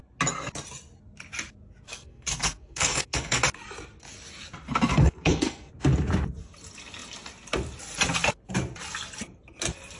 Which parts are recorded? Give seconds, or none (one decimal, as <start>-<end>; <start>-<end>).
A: 0.0-1.9; 3.4-4.9; 5.7-10.0

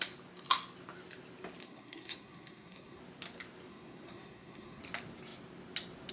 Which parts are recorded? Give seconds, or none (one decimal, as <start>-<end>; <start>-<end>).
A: 0.0-1.6; 3.0-3.7; 4.8-6.1